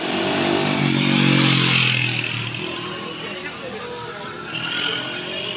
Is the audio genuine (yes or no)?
yes